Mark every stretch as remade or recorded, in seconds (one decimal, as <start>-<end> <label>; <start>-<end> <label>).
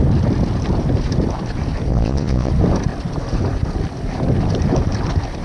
0.0-1.9 recorded; 1.9-2.5 remade; 2.5-5.4 recorded